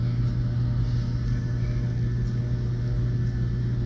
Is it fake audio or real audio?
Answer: real